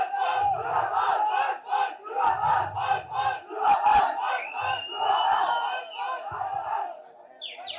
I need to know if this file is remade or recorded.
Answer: recorded